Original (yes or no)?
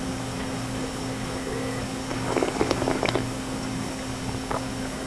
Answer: no